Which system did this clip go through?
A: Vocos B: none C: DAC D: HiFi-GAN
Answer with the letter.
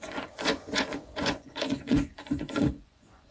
A